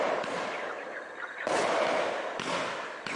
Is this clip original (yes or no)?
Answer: yes